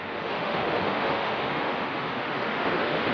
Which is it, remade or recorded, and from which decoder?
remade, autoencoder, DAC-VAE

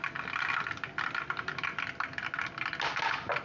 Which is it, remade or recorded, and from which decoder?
recorded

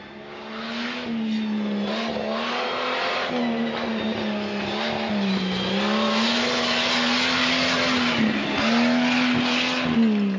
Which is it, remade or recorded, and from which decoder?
recorded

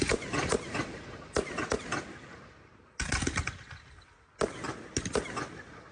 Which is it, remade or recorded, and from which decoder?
recorded